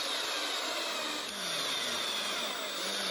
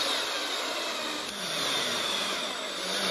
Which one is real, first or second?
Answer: first